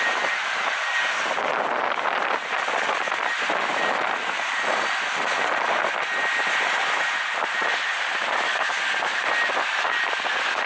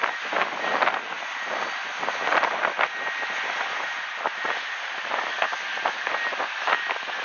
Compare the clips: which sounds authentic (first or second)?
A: second